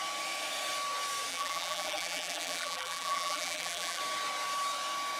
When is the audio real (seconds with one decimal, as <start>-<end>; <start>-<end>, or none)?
0.0-1.3; 4.0-5.2